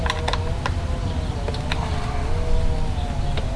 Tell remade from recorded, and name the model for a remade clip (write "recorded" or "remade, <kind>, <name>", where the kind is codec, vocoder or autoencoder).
recorded